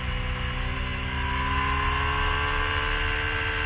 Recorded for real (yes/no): yes